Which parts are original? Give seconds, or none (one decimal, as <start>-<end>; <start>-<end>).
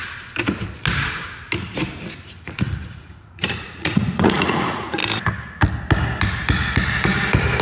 0.0-2.3; 5.0-7.6